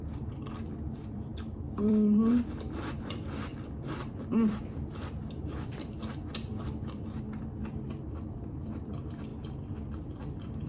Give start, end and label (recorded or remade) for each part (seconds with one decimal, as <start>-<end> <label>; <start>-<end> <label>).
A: 0.0-3.5 remade; 3.5-4.0 recorded; 4.0-9.3 remade; 9.3-9.9 recorded; 9.9-10.7 remade